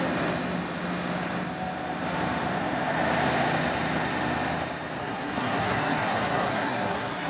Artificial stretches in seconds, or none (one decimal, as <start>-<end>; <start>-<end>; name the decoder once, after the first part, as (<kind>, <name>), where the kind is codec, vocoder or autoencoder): 5.0-7.3 (codec, SNAC)